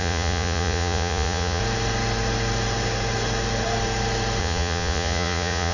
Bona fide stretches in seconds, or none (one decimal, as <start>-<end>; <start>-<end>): 1.6-4.4